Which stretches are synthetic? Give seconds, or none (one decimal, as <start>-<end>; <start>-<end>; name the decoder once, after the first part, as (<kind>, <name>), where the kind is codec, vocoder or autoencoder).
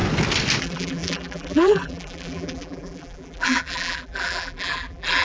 0.6-5.2 (vocoder, BigVGAN v2)